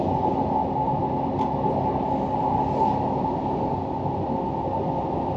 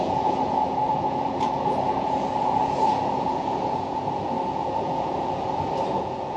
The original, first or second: first